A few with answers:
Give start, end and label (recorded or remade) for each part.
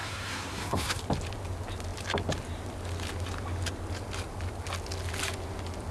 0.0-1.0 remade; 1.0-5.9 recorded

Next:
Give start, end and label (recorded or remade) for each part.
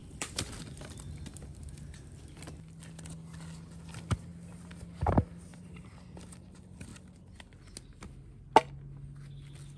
0.0-0.8 remade; 0.8-5.5 recorded; 5.5-6.2 remade; 6.2-9.8 recorded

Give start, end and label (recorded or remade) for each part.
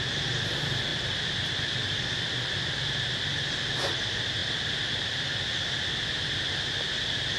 0.0-7.4 recorded